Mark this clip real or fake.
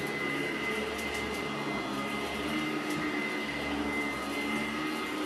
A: real